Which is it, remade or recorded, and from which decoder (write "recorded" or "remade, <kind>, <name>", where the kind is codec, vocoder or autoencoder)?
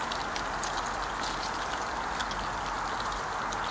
recorded